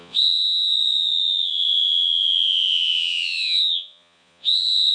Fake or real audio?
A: fake